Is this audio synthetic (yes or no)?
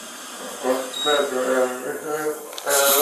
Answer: no